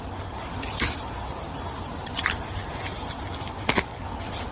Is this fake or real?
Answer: real